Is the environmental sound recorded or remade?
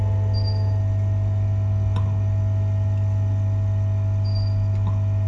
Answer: recorded